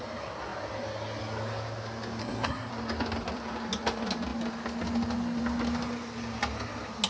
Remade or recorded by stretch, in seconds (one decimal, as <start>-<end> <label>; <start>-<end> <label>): 0.0-2.2 recorded; 2.2-2.7 remade; 2.7-7.1 recorded